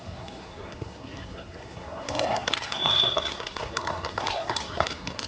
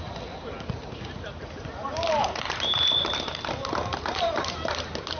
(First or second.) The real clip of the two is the second